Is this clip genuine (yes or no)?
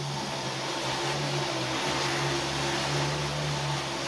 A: yes